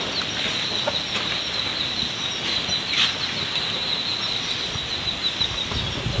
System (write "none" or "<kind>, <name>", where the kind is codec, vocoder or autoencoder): none